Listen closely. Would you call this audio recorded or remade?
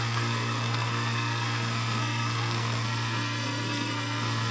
remade